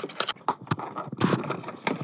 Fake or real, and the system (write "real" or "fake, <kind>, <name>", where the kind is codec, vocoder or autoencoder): real